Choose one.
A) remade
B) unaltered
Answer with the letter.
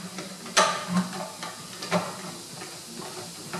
B